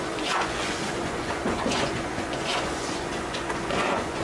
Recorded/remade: remade